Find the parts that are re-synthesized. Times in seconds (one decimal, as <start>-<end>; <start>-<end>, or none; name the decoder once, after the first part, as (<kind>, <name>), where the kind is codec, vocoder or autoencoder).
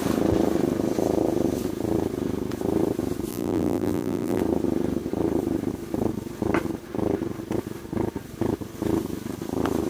3.3-4.4 (vocoder, BigVGAN v2)